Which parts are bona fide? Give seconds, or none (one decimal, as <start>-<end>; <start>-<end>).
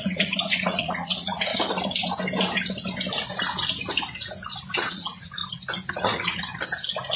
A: 1.5-4.7; 5.4-5.9; 6.5-7.2